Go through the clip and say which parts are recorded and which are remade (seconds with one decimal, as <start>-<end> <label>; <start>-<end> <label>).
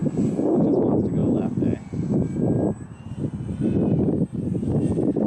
0.0-5.3 recorded